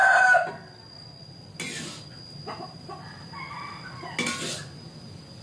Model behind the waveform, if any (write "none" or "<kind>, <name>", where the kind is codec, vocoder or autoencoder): none